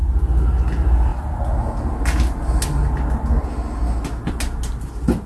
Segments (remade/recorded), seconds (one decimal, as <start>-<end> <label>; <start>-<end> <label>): 0.0-5.3 recorded